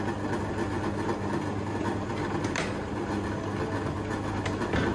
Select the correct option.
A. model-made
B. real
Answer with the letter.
B